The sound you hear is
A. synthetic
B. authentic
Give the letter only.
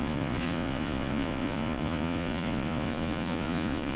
A